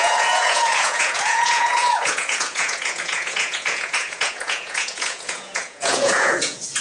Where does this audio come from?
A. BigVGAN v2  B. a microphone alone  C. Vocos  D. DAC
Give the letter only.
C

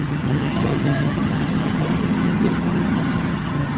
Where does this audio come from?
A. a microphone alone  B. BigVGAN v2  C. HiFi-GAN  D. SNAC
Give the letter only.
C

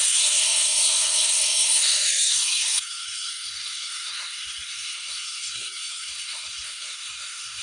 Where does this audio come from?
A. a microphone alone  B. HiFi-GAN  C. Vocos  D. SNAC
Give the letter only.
D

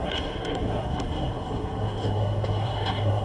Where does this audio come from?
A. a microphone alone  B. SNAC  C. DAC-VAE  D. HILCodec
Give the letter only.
B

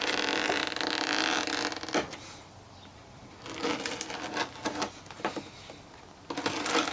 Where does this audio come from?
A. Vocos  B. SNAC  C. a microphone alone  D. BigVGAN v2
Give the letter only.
C